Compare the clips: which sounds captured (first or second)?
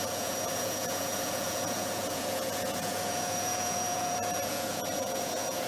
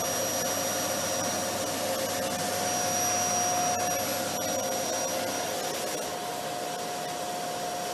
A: second